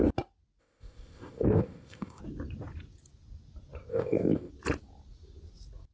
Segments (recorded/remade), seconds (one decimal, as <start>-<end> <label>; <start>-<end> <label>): 0.0-0.6 recorded; 0.6-2.2 remade; 2.2-3.9 recorded; 3.9-4.5 remade; 4.5-5.9 recorded